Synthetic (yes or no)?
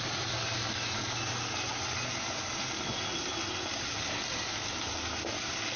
no